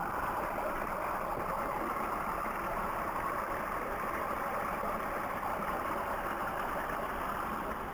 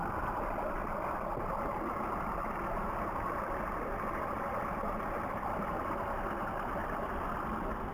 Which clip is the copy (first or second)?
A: first